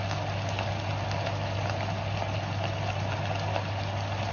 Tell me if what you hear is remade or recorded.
recorded